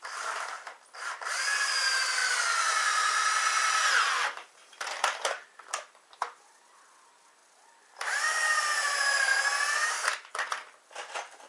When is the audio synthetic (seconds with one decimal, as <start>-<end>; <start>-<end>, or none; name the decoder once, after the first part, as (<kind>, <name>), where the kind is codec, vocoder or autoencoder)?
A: none